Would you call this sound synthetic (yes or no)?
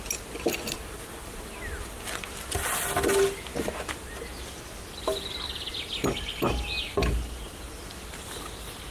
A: no